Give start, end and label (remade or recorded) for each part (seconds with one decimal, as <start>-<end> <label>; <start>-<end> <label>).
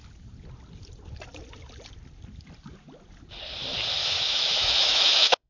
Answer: 0.0-4.0 recorded; 4.0-5.5 remade